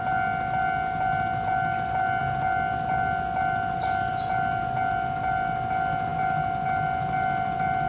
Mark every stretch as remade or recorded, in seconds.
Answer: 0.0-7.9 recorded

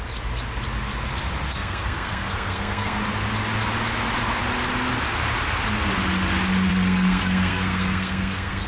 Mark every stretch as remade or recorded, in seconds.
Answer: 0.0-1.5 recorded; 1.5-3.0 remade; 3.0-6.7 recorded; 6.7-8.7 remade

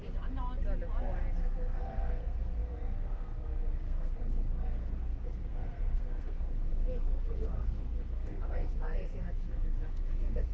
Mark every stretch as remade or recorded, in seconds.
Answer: 0.0-1.4 recorded; 1.4-10.5 remade